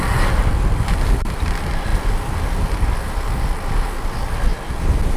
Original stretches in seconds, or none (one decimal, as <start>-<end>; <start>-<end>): 0.0-5.2